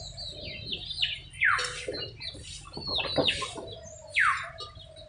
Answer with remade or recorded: recorded